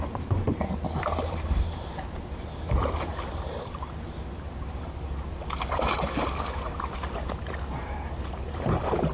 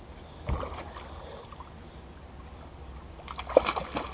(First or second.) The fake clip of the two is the first